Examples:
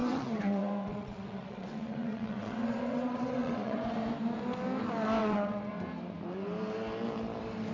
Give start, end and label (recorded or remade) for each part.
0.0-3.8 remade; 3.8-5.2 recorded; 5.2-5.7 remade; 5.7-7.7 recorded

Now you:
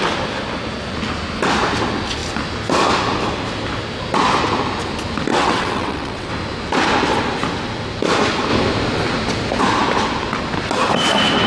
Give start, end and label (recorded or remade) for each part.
0.0-5.3 recorded; 5.3-6.3 remade; 6.3-11.5 recorded

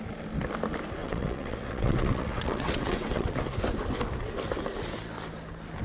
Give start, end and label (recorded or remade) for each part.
0.0-1.0 recorded; 1.0-3.4 remade; 3.4-5.8 recorded

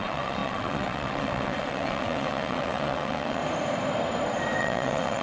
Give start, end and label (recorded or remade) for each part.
0.0-3.4 remade; 3.4-4.6 recorded; 4.6-5.2 remade